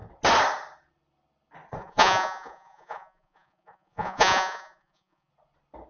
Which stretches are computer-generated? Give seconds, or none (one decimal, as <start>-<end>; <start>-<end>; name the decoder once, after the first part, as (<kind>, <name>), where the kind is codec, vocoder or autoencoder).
1.8-5.3 (vocoder, Vocos)

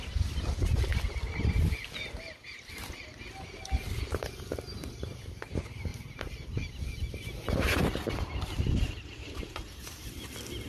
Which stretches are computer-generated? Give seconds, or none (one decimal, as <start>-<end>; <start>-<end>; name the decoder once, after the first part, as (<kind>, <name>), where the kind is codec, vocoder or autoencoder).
none

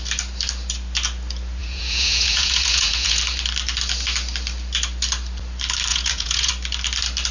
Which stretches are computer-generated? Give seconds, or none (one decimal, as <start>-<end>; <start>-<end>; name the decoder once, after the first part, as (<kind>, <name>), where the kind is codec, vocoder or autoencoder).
1.6-3.2 (vocoder, Vocos); 5.9-6.5

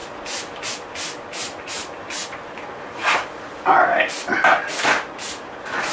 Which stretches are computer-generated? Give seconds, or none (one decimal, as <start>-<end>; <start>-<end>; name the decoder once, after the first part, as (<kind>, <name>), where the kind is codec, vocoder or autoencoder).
none